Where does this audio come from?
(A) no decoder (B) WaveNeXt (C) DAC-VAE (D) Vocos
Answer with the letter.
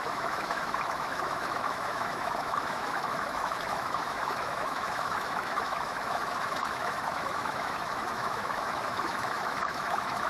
C